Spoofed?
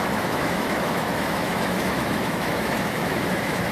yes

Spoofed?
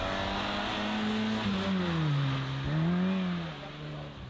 no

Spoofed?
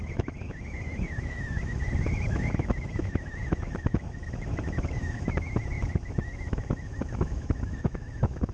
yes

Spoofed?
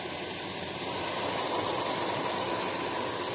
no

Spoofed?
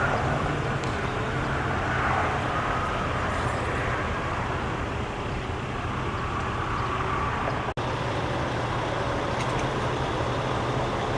no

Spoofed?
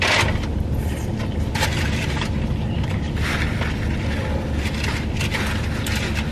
no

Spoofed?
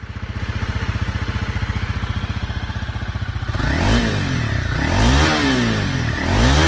no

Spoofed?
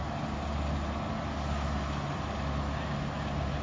no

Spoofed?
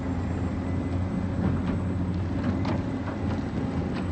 no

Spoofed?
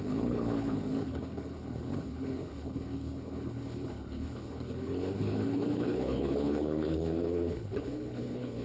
yes